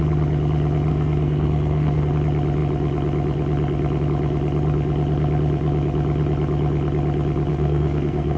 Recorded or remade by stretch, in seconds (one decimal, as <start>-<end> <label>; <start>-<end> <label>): 0.0-0.9 recorded; 0.9-2.1 remade; 2.1-7.5 recorded; 7.5-8.4 remade